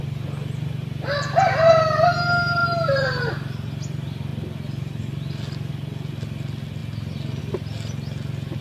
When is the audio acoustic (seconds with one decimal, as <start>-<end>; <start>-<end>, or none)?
0.0-8.6